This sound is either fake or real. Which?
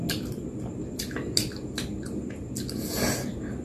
real